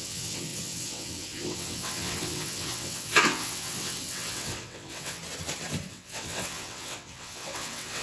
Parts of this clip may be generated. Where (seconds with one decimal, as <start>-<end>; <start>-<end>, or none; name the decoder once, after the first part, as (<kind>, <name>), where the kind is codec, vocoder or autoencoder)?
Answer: 0.0-5.2 (vocoder, WaveNeXt); 5.9-8.0